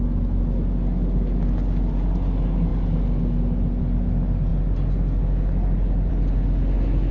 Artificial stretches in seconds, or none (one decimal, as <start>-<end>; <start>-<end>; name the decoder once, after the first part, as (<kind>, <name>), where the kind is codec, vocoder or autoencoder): none